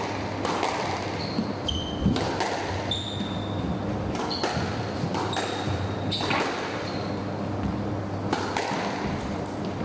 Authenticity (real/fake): real